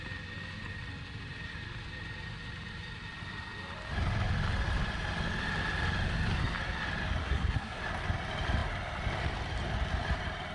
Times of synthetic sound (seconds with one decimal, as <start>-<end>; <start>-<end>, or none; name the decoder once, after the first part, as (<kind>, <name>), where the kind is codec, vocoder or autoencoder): 7.2-7.8 (codec, SNAC)